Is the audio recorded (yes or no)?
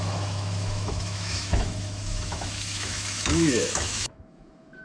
no